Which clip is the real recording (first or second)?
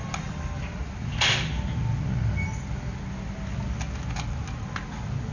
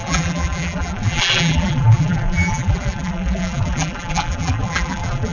first